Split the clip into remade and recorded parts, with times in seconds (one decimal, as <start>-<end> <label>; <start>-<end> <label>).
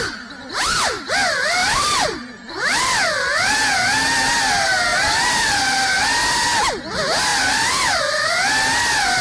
0.0-1.6 recorded; 1.6-3.5 remade; 3.5-4.9 recorded; 4.9-5.6 remade; 5.6-7.3 recorded; 7.3-8.3 remade; 8.3-9.2 recorded